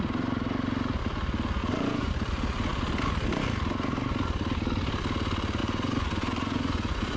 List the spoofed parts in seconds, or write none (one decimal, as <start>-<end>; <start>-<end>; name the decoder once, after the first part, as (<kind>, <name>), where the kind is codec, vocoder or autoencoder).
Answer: 1.6-2.1 (vocoder, Vocos); 5.6-7.2